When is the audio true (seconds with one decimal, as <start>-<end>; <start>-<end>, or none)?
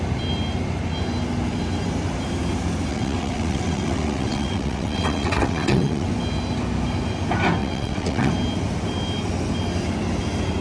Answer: 0.0-2.9; 6.1-7.6; 8.3-10.6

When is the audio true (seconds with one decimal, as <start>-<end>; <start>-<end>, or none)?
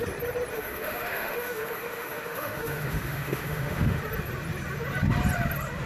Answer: 0.0-0.5; 4.0-5.9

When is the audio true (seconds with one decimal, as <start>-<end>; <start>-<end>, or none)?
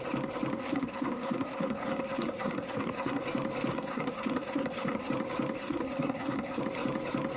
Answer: 0.0-0.6; 3.2-3.7; 5.1-5.6; 6.6-7.4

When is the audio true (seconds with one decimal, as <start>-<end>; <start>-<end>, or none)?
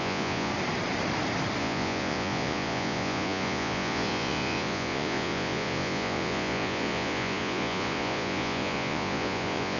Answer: 0.5-1.6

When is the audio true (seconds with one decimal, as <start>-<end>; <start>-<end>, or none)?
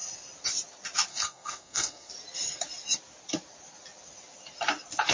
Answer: 0.0-1.1; 2.1-5.1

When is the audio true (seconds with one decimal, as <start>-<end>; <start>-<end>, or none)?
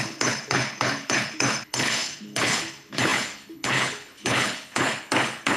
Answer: none